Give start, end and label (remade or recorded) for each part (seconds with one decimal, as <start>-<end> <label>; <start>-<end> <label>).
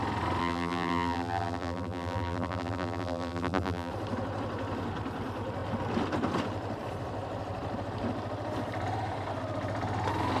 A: 0.0-0.4 recorded; 0.4-3.9 remade; 3.9-10.4 recorded